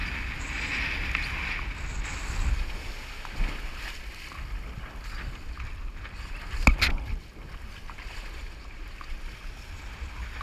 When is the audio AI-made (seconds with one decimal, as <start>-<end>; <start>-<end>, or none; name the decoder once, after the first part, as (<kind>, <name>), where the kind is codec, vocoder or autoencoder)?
none